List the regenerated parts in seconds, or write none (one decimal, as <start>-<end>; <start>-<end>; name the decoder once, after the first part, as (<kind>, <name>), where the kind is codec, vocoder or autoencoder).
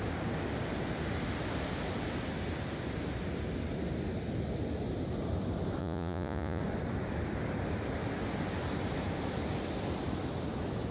5.8-6.6 (vocoder, Vocos)